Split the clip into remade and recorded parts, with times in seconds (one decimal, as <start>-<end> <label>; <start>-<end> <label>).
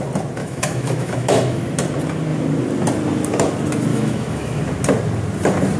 0.0-0.4 recorded; 0.4-1.6 remade; 1.6-3.9 recorded; 3.9-4.6 remade; 4.6-5.8 recorded